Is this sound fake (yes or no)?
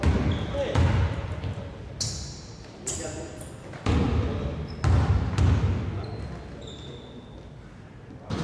no